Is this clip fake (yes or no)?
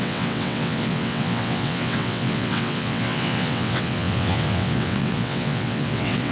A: yes